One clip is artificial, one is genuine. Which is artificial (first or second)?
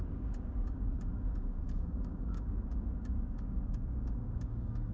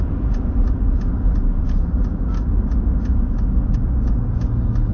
first